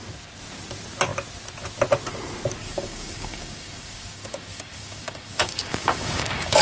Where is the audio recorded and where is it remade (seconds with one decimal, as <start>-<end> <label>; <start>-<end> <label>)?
0.0-2.6 recorded; 2.6-6.6 remade